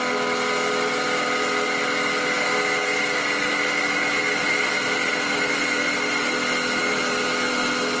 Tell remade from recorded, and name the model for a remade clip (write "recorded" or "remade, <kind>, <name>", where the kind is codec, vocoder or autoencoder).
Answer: recorded